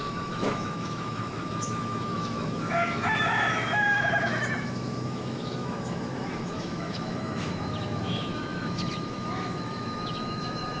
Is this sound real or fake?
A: fake